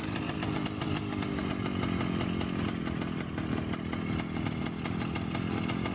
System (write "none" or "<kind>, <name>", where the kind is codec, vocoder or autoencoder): none